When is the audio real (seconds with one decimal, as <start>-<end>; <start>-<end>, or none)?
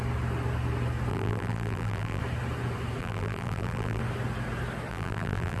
0.0-1.1; 2.2-3.0; 4.0-4.9